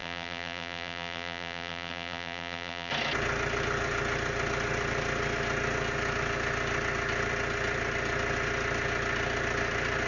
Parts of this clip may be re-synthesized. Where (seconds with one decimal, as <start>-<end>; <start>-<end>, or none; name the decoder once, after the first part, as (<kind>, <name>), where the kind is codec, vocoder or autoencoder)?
0.0-2.9 (vocoder, BigVGAN v2)